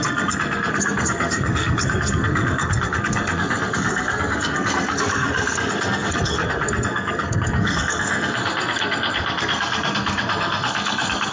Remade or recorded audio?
remade